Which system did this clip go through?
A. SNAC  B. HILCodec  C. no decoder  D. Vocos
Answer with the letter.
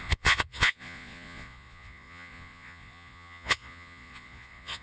D